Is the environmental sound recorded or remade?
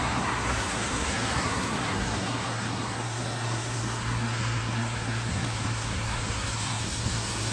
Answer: remade